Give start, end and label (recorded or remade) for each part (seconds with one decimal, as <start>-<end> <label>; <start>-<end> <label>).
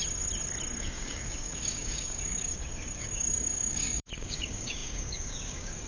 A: 0.0-0.8 recorded; 0.8-5.9 remade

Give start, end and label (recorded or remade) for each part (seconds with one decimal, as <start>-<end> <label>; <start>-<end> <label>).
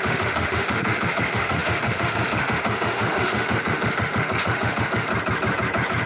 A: 0.0-5.1 remade; 5.1-6.1 recorded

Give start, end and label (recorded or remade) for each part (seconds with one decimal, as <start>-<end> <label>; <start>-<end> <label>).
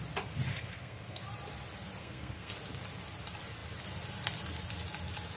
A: 0.0-0.5 recorded; 0.5-1.2 remade; 1.2-2.0 recorded; 2.0-2.5 remade; 2.5-5.4 recorded